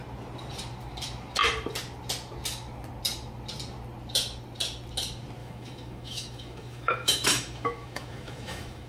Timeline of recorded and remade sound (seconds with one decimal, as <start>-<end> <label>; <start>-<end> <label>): 0.0-5.4 recorded; 5.4-8.9 remade